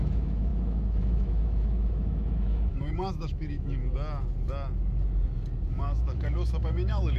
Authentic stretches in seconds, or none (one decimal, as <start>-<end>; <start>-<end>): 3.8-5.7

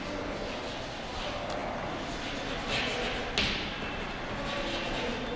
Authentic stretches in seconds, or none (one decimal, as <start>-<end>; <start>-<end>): 0.0-5.4

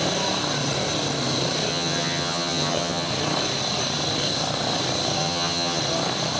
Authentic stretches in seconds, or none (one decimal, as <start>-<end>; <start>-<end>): 0.0-1.7; 3.1-5.2; 5.8-6.4

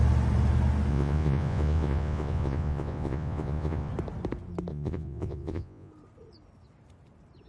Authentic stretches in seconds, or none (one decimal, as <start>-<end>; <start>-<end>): 0.0-0.9; 3.9-4.7; 5.9-7.5